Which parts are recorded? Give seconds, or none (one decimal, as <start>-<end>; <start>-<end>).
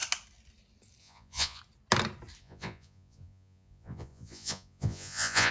0.0-1.0; 1.6-2.4